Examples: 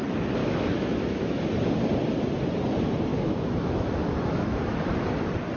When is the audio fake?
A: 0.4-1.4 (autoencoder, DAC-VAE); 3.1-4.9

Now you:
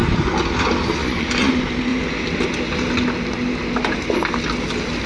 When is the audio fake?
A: 1.0-1.5 (vocoder, Vocos)